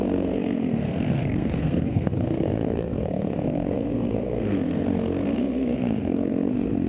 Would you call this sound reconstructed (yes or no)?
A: yes